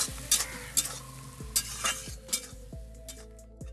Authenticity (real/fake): real